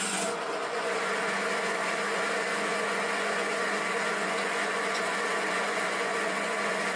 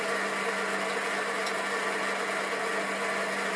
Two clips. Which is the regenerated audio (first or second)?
first